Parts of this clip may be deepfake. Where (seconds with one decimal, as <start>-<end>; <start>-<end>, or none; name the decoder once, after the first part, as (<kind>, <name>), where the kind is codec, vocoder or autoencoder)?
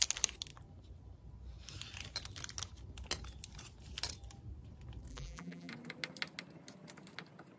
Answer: 5.1-5.7 (vocoder, BigVGAN v2)